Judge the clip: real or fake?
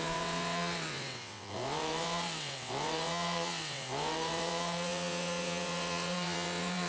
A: fake